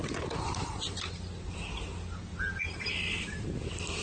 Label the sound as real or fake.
real